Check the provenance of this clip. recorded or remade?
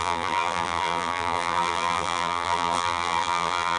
remade